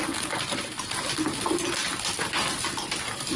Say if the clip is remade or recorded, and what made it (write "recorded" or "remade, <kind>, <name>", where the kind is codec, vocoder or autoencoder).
recorded